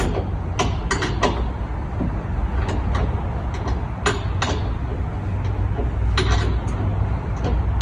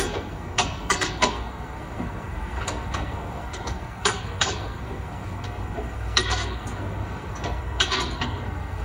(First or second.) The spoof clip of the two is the second